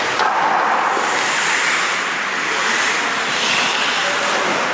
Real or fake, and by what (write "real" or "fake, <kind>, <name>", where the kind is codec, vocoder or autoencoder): real